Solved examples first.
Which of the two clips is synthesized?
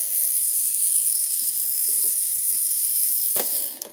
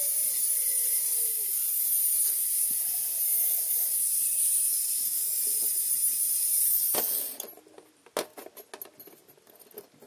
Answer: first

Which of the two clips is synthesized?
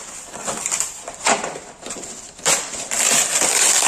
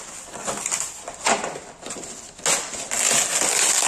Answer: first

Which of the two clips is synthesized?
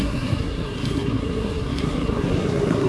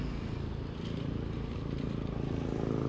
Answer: first